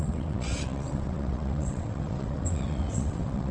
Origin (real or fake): fake